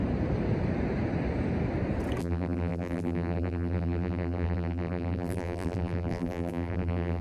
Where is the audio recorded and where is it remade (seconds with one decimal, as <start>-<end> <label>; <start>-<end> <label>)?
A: 0.0-2.2 recorded; 2.2-7.2 remade